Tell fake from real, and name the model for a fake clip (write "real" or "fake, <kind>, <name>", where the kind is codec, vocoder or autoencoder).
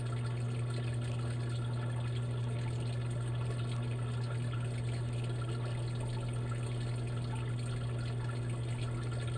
real